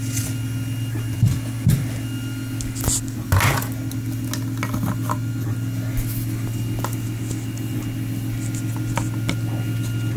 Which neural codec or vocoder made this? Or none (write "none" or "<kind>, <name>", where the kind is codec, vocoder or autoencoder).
none